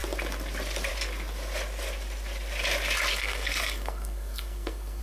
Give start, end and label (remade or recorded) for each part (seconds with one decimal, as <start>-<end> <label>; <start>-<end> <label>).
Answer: 0.0-3.1 recorded; 3.1-5.0 remade